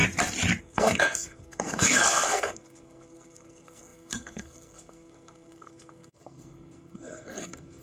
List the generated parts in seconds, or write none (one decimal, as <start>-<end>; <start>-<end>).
0.6-7.8